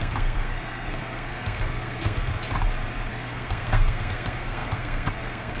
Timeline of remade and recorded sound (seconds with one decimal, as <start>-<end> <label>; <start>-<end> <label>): 0.0-2.3 remade; 2.3-3.1 recorded; 3.1-5.6 remade